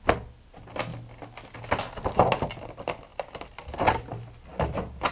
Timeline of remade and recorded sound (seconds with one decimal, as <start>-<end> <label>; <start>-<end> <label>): 0.0-5.1 recorded